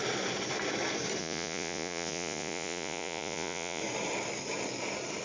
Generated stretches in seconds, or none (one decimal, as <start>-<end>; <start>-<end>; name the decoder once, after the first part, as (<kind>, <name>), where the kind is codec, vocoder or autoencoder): 1.2-3.8 (vocoder, Vocos)